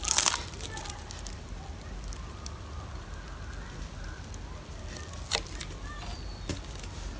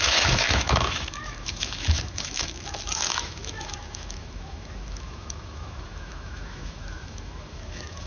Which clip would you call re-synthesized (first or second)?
second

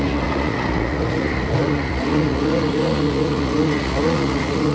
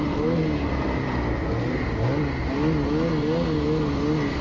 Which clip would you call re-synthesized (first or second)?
first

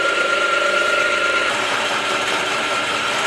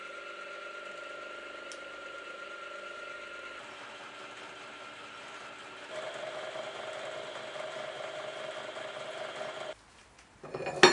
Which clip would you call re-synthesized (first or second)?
first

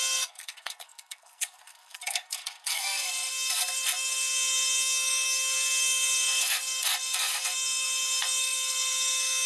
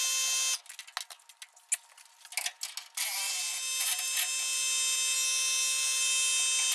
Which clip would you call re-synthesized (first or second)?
first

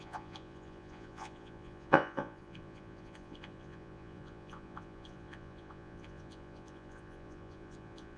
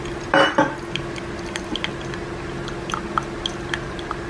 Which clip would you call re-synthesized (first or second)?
first